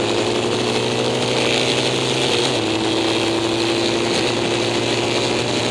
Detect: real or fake real